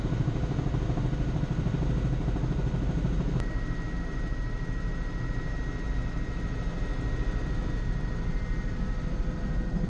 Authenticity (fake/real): real